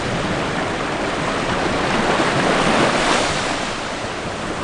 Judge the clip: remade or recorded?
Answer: recorded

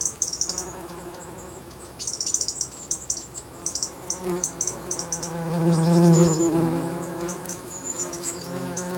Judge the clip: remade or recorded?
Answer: remade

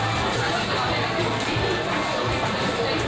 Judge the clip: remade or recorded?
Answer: recorded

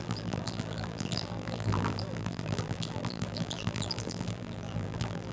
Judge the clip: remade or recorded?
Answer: remade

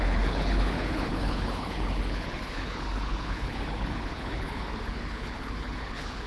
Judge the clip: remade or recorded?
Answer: remade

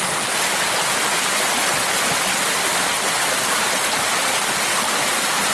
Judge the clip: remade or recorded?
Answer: recorded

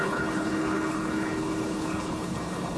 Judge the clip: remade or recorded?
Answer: remade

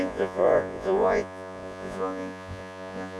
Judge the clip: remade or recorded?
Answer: remade